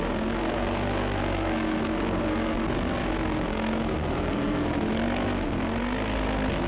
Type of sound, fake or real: fake